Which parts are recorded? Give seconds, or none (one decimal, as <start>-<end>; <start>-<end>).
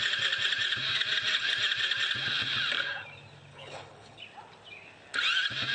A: 0.0-3.5; 4.2-5.7